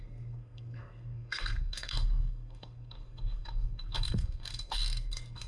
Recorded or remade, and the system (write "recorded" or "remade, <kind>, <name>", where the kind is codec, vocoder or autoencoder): remade, codec, SNAC